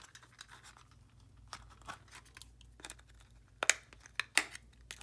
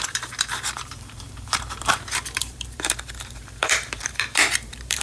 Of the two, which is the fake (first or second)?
second